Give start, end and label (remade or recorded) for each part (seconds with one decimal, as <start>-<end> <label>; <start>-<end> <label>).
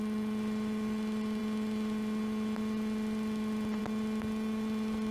0.0-5.1 recorded